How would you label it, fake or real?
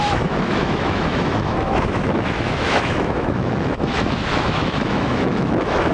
fake